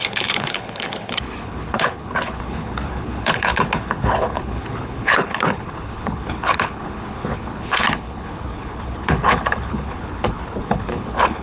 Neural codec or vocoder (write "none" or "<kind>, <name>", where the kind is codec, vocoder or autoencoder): codec, HILCodec